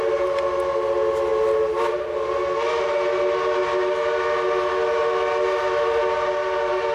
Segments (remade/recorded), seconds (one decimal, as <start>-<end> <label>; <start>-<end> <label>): 0.0-6.9 recorded